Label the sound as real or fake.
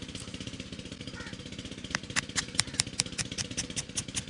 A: real